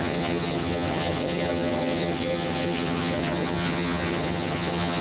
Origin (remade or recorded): remade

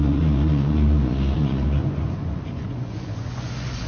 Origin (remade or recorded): remade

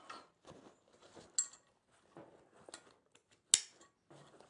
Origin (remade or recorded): recorded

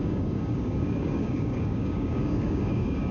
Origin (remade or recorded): remade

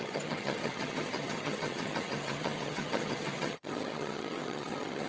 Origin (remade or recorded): remade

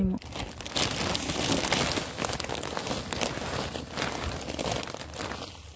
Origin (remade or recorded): recorded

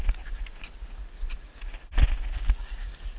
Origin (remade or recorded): recorded